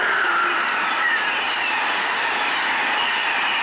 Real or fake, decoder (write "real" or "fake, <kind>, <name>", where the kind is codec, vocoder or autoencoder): fake, vocoder, BigVGAN v2